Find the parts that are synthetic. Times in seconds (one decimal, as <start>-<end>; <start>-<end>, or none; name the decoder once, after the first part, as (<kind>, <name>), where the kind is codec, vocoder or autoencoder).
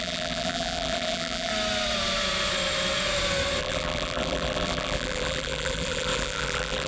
0.0-1.5 (vocoder, BigVGAN v2); 3.6-6.9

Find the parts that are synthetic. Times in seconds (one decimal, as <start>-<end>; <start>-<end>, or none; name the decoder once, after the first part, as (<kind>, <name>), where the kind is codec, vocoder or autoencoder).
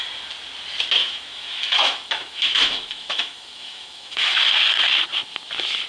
1.0-4.4 (autoencoder, DAC-VAE)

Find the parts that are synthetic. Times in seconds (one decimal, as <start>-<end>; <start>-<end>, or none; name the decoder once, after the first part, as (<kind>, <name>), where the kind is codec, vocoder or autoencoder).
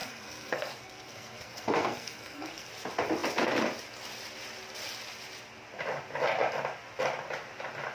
0.0-2.7 (codec, SNAC)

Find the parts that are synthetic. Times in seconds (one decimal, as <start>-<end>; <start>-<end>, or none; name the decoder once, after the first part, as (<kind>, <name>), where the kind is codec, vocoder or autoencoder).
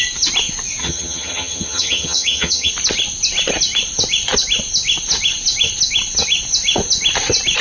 0.8-2.7 (vocoder, HiFi-GAN)